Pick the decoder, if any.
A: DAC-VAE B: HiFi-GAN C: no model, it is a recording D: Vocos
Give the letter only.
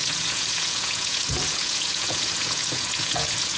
D